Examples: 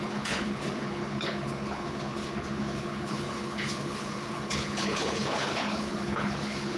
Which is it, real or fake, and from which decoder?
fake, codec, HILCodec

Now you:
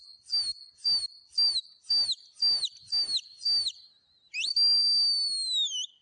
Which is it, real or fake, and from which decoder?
real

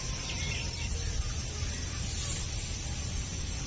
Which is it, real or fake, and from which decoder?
real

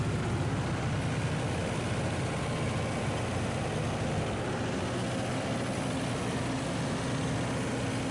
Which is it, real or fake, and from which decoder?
real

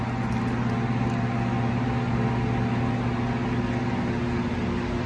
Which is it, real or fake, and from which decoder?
real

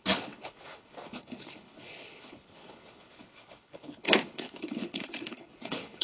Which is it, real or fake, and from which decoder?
fake, codec, HILCodec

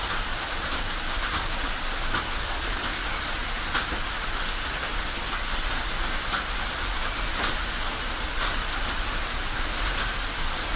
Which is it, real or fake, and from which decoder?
real